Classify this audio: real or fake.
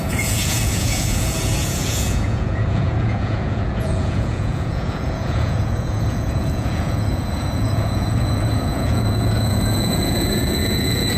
fake